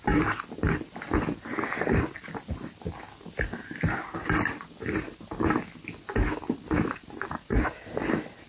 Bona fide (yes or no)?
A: yes